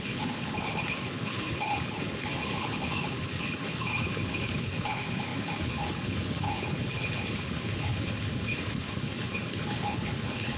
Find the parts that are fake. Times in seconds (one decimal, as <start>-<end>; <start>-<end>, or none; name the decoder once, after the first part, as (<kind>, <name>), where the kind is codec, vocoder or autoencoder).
0.0-10.6 (codec, HILCodec)

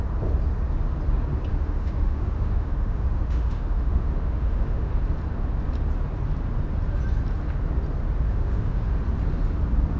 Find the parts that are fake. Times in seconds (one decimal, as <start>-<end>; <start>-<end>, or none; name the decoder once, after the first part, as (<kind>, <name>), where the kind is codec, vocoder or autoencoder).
1.5-4.9 (autoencoder, DAC-VAE); 8.3-8.9

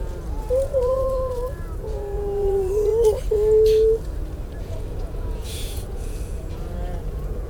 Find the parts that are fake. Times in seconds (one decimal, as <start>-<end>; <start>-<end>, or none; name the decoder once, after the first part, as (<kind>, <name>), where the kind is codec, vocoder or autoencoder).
0.0-2.9 (vocoder, Vocos); 4.6-7.5

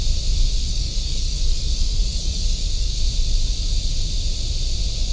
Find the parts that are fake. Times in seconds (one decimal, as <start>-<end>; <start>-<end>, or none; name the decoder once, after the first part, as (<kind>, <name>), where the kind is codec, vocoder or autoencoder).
0.6-3.0 (codec, DAC)